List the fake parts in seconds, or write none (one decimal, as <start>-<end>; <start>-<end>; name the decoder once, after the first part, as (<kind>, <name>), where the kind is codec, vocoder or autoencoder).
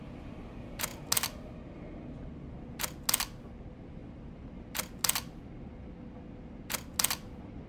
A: none